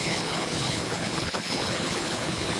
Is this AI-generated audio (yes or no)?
yes